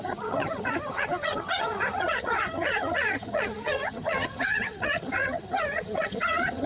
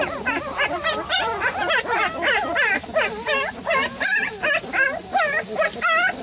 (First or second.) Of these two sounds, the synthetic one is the first